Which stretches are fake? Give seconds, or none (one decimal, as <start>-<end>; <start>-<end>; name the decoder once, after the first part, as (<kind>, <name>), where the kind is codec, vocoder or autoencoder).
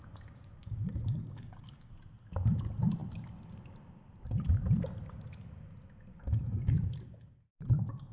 0.6-1.9 (codec, DAC); 6.1-6.7